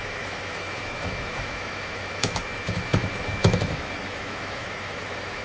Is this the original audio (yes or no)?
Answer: no